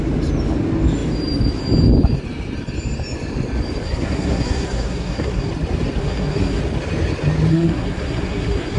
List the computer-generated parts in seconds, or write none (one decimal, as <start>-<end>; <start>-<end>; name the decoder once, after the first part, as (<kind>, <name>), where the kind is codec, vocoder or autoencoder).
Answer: 3.8-5.5 (codec, SNAC); 6.0-6.6; 7.5-8.8